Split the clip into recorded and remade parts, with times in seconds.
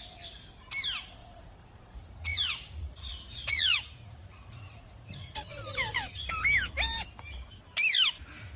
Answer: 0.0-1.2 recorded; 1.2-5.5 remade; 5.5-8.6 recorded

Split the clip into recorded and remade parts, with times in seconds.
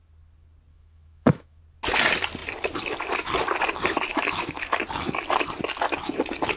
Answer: 0.0-0.7 recorded; 0.7-1.6 remade; 1.6-4.1 recorded; 4.1-4.8 remade; 4.8-6.6 recorded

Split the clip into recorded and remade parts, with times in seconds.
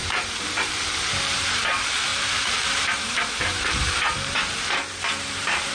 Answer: 0.0-0.7 remade; 0.7-2.1 recorded; 2.1-5.7 remade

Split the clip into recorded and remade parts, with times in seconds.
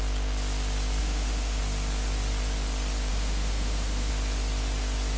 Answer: 0.0-1.0 recorded; 1.0-1.6 remade; 1.6-3.1 recorded; 3.1-4.1 remade; 4.1-5.2 recorded